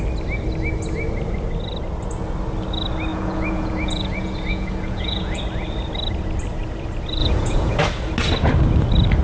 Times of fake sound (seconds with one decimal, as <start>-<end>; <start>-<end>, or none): 3.1-5.4; 7.2-7.8